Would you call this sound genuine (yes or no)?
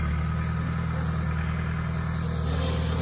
yes